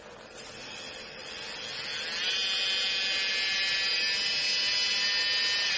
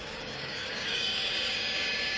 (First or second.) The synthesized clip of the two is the second